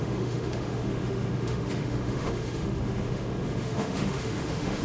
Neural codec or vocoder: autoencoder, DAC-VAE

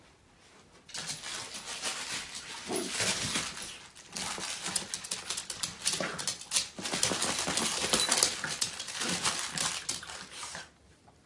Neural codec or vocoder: none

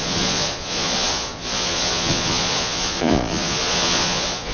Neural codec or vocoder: vocoder, Vocos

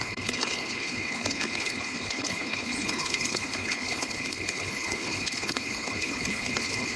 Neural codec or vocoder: codec, HILCodec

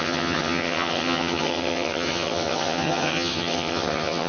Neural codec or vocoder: vocoder, HiFi-GAN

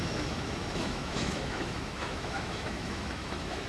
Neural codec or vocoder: autoencoder, DAC-VAE